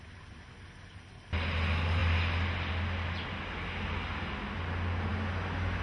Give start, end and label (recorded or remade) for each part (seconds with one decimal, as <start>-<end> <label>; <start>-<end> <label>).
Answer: 0.0-5.8 recorded